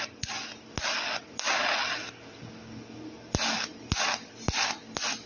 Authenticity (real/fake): real